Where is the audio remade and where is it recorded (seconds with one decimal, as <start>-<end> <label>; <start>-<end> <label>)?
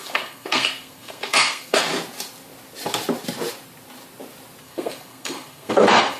0.0-1.9 remade; 1.9-4.6 recorded; 4.6-6.2 remade